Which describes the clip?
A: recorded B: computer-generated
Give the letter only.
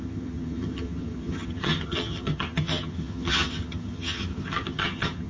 B